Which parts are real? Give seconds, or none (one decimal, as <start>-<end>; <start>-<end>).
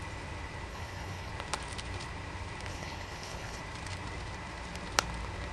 0.0-0.7; 1.3-2.7; 3.6-5.5